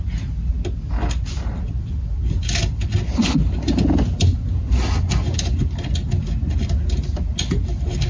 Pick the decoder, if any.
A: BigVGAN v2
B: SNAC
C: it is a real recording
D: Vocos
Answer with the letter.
C